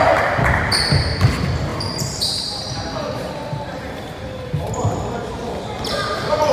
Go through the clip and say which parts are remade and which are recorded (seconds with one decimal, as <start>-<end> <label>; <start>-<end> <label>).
0.0-1.7 recorded; 1.7-5.6 remade; 5.6-6.5 recorded